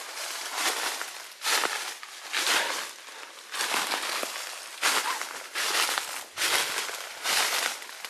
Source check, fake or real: real